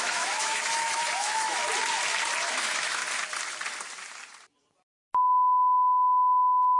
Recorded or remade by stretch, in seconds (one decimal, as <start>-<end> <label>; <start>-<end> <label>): 0.0-1.6 remade; 1.6-2.5 recorded; 2.5-3.0 remade; 3.0-6.8 recorded